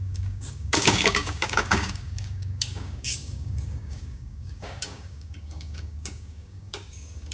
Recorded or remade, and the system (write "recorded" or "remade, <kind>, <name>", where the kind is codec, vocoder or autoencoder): remade, codec, DAC